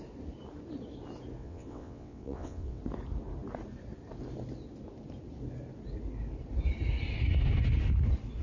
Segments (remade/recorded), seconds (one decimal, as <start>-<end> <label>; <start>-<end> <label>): 0.0-1.4 recorded; 1.4-2.8 remade; 2.8-8.4 recorded